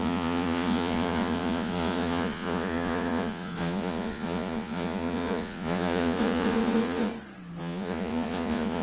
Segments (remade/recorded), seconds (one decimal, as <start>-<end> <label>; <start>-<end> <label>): 0.0-7.1 remade; 7.1-7.6 recorded; 7.6-8.8 remade